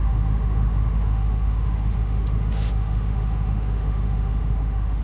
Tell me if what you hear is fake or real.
fake